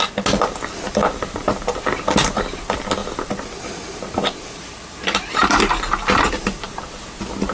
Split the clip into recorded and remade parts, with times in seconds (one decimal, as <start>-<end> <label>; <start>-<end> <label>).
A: 0.0-7.5 recorded